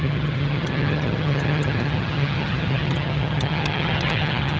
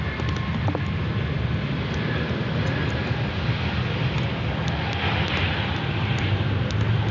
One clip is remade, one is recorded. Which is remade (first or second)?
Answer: first